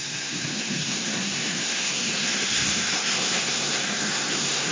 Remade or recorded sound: remade